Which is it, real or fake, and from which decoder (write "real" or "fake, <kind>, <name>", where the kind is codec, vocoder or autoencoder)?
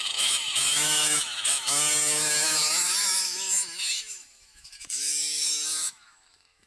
fake, autoencoder, DAC-VAE